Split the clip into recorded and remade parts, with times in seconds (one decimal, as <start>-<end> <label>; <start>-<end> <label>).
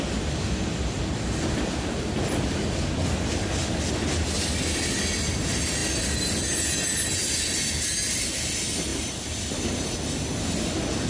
0.0-11.1 recorded